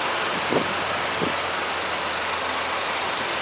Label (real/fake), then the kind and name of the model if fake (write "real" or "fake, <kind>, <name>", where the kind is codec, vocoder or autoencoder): real